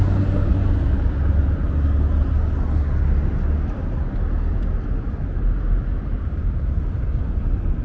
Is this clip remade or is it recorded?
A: recorded